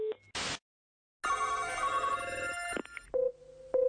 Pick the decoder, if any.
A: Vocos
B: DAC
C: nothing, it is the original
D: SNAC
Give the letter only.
C